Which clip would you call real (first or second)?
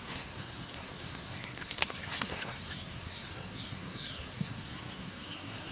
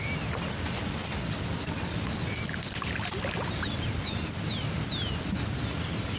second